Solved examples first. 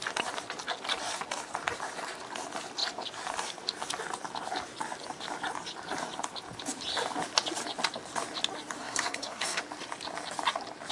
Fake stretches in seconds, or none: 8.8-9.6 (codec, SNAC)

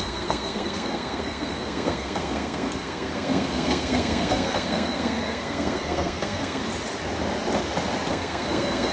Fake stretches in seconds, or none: 0.0-6.6 (codec, SNAC); 8.1-8.9